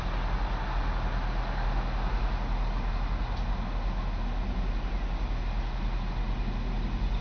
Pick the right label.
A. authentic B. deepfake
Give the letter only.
A